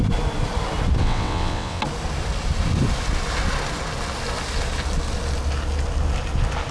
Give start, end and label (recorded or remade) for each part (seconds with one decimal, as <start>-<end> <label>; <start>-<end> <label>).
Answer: 0.0-1.0 recorded; 1.0-1.8 remade; 1.8-6.7 recorded